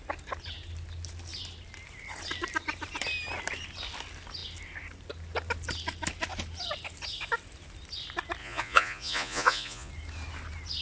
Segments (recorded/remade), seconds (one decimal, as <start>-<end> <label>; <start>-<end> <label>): 0.0-8.4 recorded; 8.4-9.9 remade; 9.9-10.8 recorded